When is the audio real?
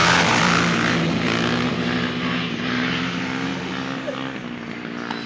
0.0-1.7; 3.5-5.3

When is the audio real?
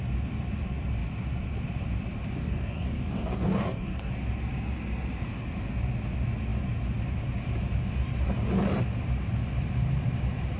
0.0-2.4; 4.1-10.6